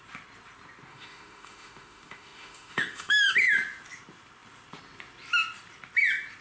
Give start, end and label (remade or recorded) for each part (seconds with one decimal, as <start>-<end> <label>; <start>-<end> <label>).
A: 0.0-0.9 recorded; 0.9-3.3 remade; 3.3-6.4 recorded